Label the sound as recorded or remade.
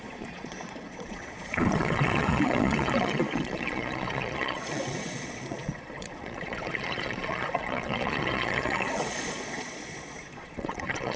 remade